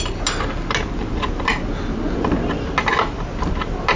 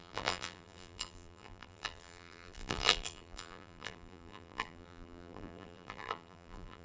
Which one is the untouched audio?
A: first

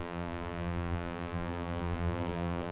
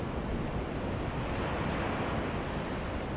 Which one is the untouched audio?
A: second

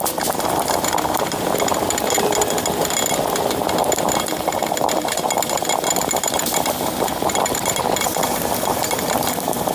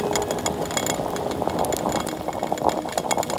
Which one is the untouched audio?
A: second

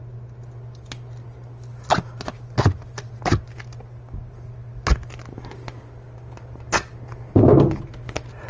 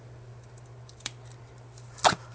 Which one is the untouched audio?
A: first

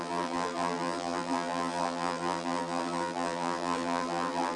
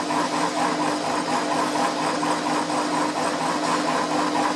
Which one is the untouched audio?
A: second